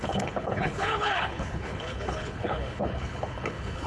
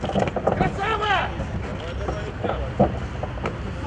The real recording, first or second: second